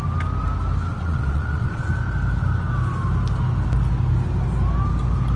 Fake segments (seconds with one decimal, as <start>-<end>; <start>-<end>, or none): 0.9-1.9